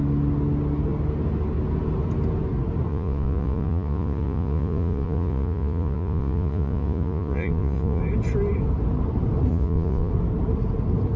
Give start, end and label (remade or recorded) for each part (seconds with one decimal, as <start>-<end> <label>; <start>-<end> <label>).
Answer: 0.0-2.9 recorded; 2.9-8.0 remade; 8.0-9.5 recorded; 9.5-10.1 remade; 10.1-11.2 recorded